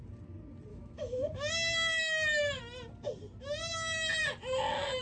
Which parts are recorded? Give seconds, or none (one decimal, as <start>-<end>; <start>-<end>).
0.0-0.7; 1.5-1.9; 2.6-5.0